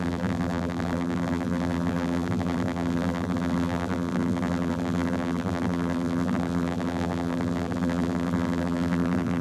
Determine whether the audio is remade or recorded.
remade